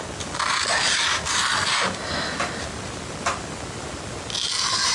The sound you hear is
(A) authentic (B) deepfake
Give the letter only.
A